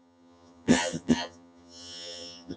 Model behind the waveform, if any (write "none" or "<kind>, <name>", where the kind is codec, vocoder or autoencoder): vocoder, HiFi-GAN